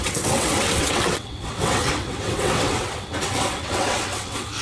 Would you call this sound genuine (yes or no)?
no